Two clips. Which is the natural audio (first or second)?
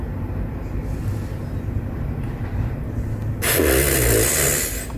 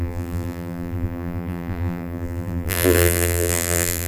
first